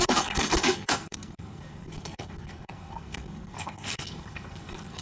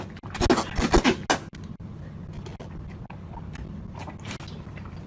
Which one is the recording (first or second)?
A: second